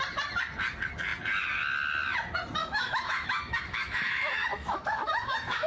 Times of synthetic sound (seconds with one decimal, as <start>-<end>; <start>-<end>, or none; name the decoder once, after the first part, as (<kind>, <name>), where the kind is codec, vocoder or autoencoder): 2.6-5.7 (autoencoder, DAC-VAE)